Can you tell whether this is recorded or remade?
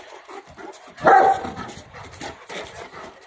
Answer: remade